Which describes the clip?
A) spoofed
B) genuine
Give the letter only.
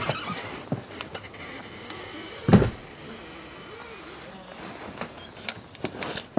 B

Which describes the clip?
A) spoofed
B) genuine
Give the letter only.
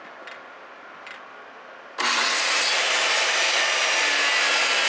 B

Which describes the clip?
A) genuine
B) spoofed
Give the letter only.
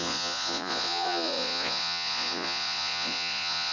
B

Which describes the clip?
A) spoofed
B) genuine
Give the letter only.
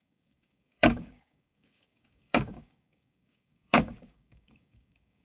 A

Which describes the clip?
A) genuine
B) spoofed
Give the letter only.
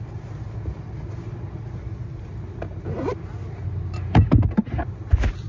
A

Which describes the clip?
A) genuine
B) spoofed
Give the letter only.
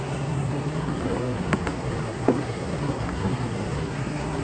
B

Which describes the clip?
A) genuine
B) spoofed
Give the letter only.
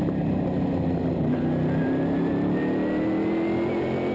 A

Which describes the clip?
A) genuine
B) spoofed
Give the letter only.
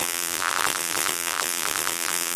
B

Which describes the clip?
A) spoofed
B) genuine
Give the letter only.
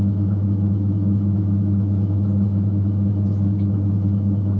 A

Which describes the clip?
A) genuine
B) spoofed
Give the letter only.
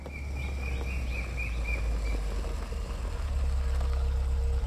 A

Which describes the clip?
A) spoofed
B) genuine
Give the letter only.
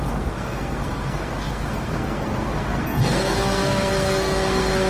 A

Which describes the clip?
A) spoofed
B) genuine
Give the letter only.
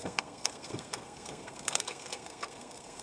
A